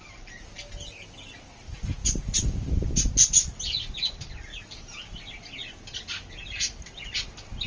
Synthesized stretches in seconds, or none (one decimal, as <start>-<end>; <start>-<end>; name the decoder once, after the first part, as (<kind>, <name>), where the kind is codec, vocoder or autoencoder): 2.0-2.9 (vocoder, BigVGAN v2)